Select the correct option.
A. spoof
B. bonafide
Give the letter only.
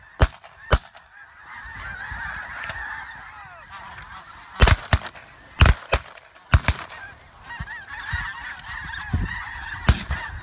B